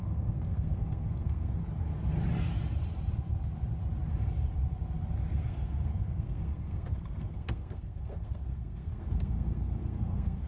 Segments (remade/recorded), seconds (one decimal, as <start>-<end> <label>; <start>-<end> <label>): 0.0-1.6 remade; 1.6-5.3 recorded; 5.3-10.5 remade